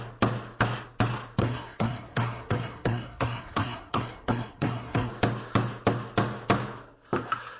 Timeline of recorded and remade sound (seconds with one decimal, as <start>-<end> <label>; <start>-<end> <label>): 0.0-1.4 recorded; 1.4-5.1 remade; 5.1-7.6 recorded